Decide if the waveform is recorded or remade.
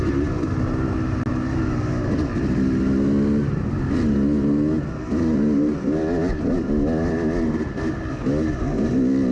recorded